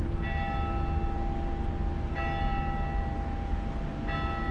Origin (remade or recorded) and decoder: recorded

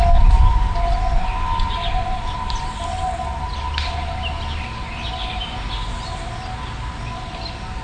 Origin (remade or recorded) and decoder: recorded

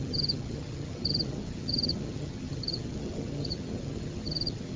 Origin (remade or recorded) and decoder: remade, vocoder, HiFi-GAN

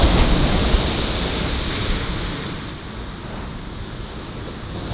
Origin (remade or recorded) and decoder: recorded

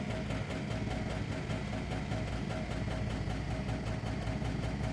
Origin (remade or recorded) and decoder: recorded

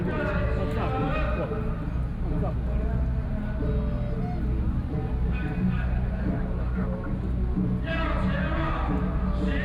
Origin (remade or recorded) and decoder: recorded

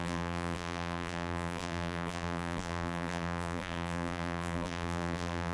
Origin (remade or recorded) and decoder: remade, vocoder, BigVGAN v2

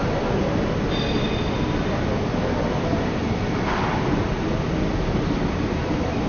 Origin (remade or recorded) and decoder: recorded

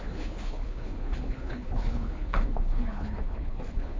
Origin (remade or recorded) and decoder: remade, codec, HILCodec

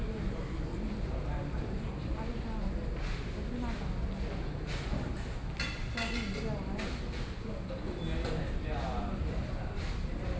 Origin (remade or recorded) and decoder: recorded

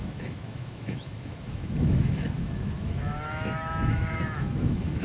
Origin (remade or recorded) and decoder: remade, autoencoder, DAC-VAE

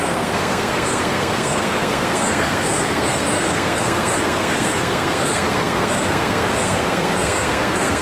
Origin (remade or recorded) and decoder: remade, codec, SNAC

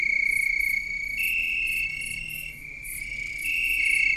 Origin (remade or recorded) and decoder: recorded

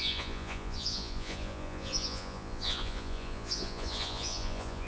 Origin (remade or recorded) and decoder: remade, vocoder, Vocos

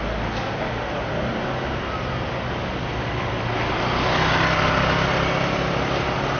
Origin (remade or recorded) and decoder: recorded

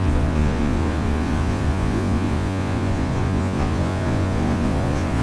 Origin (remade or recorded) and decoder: remade, vocoder, Vocos